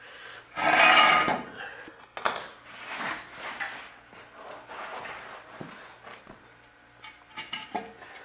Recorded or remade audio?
recorded